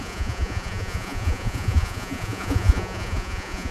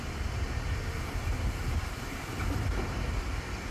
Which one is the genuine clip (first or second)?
second